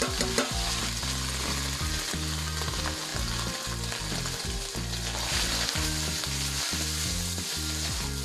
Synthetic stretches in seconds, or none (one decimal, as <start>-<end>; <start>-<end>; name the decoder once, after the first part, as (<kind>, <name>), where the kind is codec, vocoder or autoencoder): none